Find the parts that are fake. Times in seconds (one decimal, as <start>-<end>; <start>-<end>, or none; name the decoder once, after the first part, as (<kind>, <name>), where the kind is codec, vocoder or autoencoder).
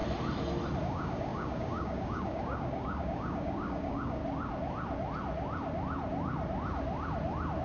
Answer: 0.8-4.2 (codec, DAC)